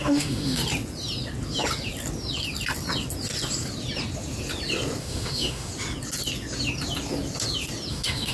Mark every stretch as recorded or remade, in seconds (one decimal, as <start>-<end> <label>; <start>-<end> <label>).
0.0-0.6 remade; 0.6-5.0 recorded; 5.0-5.7 remade; 5.7-7.9 recorded; 7.9-8.3 remade